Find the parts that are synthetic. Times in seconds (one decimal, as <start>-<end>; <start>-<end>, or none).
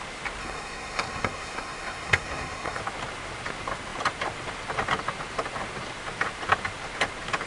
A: 0.4-2.8